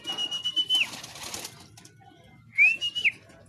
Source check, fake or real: real